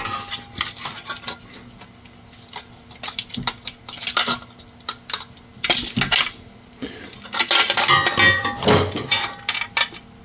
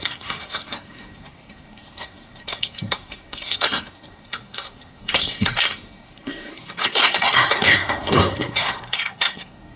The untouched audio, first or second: first